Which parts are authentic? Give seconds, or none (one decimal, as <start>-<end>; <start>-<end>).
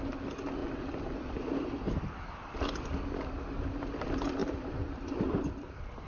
0.0-0.6; 2.3-4.4